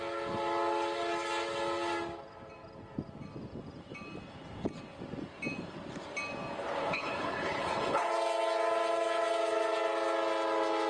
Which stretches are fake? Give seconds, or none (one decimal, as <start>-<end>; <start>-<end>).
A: 6.8-8.1